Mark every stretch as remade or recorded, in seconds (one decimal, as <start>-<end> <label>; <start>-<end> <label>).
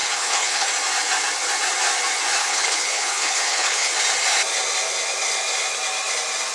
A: 0.0-0.7 remade; 0.7-2.4 recorded; 2.4-3.9 remade; 3.9-6.5 recorded